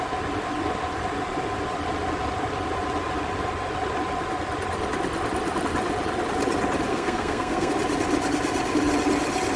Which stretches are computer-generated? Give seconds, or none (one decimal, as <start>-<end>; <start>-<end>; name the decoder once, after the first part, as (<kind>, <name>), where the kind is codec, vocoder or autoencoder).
6.9-7.7 (codec, SNAC)